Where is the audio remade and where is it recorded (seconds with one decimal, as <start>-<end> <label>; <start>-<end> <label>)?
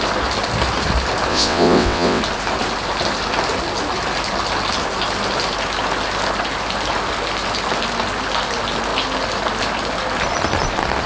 0.0-1.3 recorded; 1.3-2.2 remade; 2.2-11.1 recorded